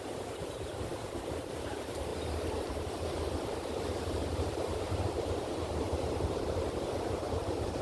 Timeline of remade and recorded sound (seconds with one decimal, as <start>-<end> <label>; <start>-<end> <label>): 0.0-7.8 remade